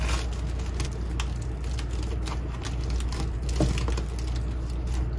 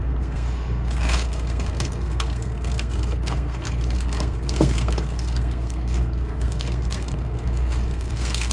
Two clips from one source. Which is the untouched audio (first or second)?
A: first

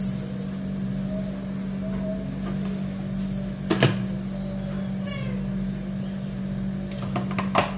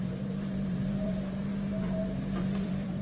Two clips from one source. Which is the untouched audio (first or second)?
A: first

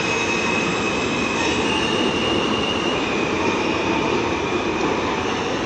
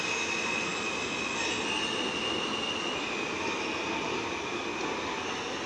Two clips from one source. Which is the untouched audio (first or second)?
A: second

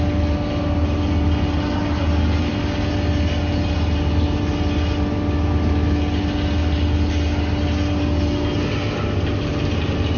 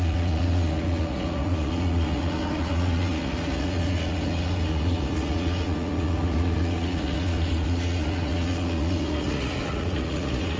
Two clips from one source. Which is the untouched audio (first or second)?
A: first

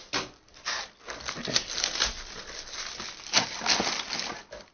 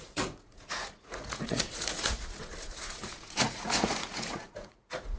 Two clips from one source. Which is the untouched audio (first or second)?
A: first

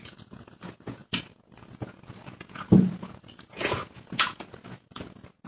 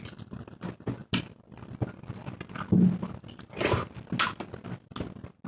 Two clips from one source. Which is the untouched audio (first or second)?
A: second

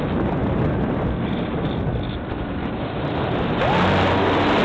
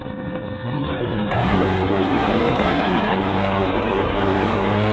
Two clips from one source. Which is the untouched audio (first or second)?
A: first